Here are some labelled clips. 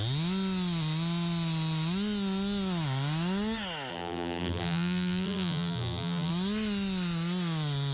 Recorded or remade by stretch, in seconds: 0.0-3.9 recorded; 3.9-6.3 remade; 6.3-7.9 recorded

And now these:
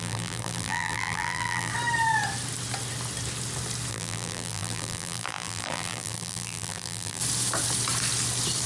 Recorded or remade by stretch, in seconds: 0.0-1.7 remade; 1.7-3.9 recorded; 3.9-7.2 remade; 7.2-8.7 recorded

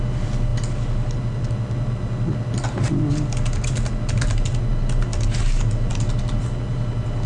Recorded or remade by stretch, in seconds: 0.0-7.3 recorded

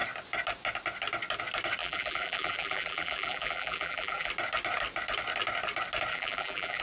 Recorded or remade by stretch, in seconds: 0.0-1.8 recorded; 1.8-4.3 remade; 4.3-6.1 recorded; 6.1-6.8 remade

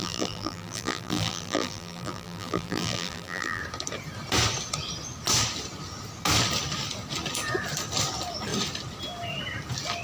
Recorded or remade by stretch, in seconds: 0.0-3.6 remade; 3.6-10.0 recorded

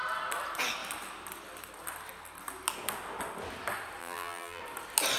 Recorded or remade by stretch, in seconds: 0.0-4.0 recorded; 4.0-4.6 remade; 4.6-5.2 recorded